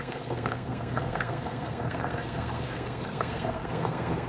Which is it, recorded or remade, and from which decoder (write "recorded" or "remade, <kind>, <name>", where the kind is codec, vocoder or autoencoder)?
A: remade, codec, SNAC